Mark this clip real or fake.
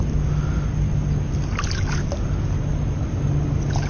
real